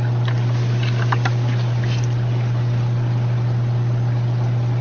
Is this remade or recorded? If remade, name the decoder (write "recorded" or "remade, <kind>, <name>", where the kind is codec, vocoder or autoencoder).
recorded